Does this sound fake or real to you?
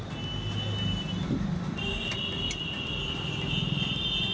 real